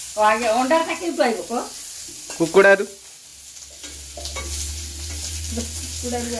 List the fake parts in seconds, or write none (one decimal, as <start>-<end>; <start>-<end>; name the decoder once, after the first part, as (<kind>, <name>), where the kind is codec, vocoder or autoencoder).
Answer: none